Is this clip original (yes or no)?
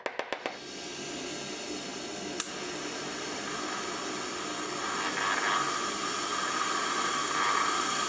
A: yes